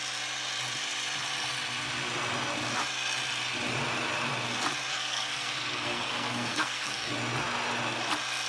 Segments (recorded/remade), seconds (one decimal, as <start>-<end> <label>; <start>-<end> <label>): 0.0-4.9 recorded; 4.9-7.1 remade; 7.1-8.5 recorded